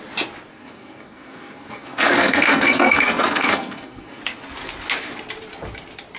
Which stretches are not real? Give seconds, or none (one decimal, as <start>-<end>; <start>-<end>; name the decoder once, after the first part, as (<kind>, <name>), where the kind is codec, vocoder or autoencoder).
0.5-4.2 (codec, SNAC)